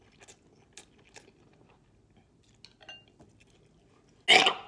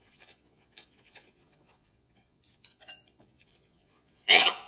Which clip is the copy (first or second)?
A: second